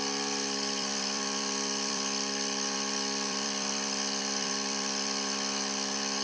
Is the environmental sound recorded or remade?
remade